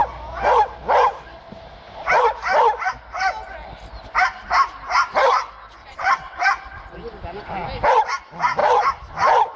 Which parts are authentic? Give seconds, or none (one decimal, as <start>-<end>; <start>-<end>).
0.0-5.8; 6.4-9.6